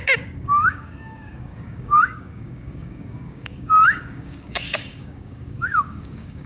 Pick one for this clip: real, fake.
fake